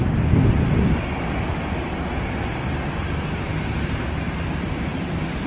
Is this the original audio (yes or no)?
yes